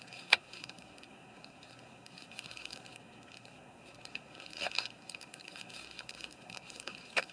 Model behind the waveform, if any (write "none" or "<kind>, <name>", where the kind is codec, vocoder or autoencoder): codec, SNAC